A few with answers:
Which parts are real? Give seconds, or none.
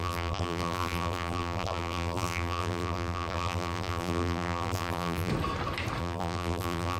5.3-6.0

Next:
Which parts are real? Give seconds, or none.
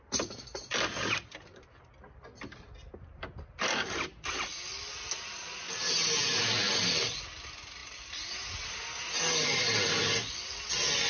0.0-11.1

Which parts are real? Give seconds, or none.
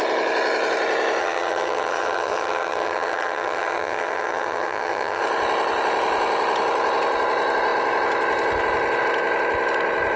0.0-1.2; 5.2-10.2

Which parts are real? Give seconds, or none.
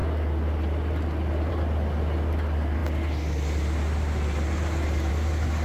0.0-5.6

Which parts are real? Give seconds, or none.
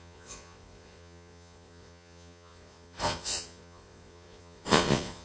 none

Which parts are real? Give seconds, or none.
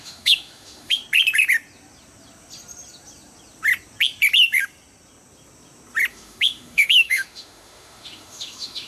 1.0-6.1